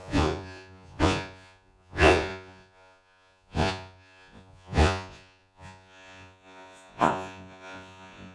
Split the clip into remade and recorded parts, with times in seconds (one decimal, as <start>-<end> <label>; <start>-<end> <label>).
0.0-8.3 remade